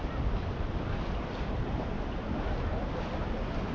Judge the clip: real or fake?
real